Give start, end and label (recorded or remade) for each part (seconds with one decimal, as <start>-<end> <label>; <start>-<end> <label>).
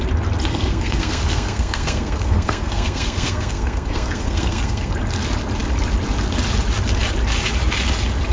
0.0-0.5 recorded; 0.5-4.9 remade; 4.9-8.3 recorded